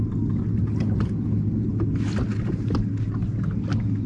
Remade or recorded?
recorded